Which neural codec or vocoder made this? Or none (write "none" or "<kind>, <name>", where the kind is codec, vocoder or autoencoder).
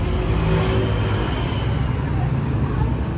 none